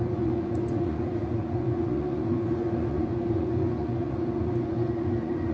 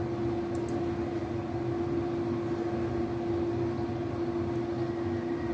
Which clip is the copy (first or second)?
first